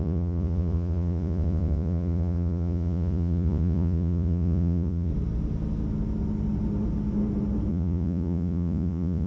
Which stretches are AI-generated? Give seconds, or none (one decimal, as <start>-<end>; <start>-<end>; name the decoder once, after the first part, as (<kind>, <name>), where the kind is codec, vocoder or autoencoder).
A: 0.0-5.1 (vocoder, Vocos); 7.7-9.3